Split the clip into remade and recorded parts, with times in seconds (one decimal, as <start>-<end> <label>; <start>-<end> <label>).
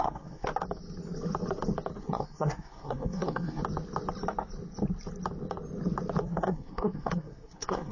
0.0-0.5 remade; 0.5-2.0 recorded; 2.0-3.6 remade; 3.6-6.2 recorded; 6.2-7.9 remade